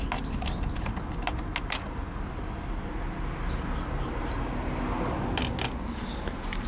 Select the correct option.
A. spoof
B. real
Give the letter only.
B